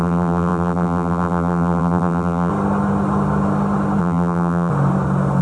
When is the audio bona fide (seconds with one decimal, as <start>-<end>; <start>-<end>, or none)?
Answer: 2.5-4.0; 4.7-5.4